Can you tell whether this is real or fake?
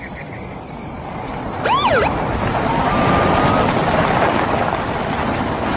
real